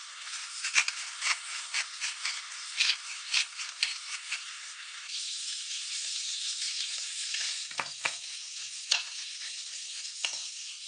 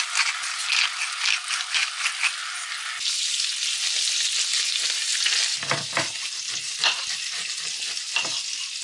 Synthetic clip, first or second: first